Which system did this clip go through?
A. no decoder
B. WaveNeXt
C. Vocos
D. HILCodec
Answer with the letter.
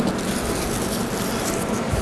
A